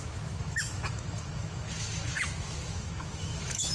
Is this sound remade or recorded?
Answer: remade